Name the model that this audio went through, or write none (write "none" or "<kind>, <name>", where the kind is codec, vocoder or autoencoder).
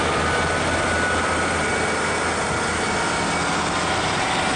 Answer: none